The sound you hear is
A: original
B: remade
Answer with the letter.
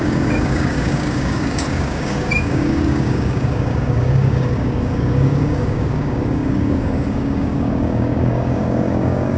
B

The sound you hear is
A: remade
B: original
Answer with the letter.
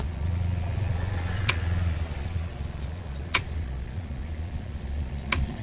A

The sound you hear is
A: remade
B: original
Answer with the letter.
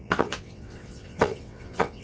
A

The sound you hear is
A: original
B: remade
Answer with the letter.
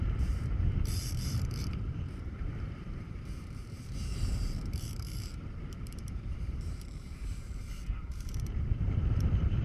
B